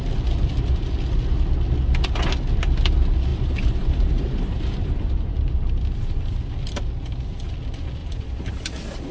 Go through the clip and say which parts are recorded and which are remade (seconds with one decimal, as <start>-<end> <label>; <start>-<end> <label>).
0.0-3.3 recorded; 3.3-6.5 remade; 6.5-8.0 recorded; 8.0-8.6 remade; 8.6-9.1 recorded